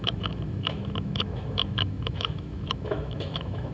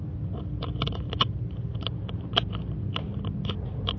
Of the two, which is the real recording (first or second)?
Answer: second